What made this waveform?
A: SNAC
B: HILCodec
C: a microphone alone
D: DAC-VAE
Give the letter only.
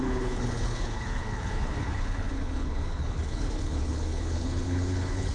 B